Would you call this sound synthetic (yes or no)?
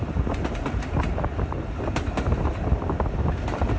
no